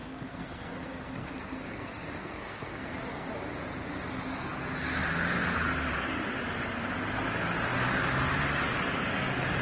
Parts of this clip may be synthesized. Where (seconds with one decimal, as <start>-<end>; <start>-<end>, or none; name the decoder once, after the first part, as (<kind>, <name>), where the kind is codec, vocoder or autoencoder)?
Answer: 0.0-3.3 (codec, SNAC)